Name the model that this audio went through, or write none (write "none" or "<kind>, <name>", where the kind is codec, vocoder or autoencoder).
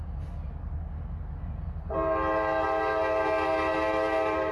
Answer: none